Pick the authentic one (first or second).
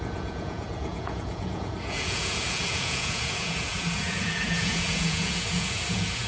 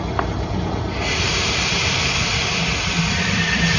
second